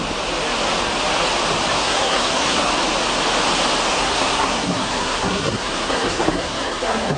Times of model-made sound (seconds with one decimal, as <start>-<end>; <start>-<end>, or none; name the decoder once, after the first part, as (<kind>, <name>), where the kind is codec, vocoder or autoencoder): 1.8-2.7 (codec, SNAC); 3.9-7.2